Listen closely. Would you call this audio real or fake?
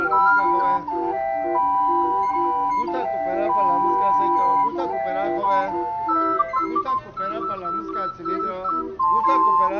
real